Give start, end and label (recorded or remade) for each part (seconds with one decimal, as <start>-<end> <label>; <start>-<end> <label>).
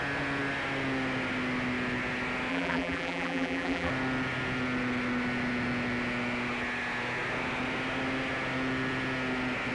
0.0-2.5 recorded; 2.5-3.9 remade; 3.9-9.7 recorded